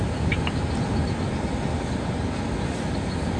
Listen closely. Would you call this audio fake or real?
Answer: real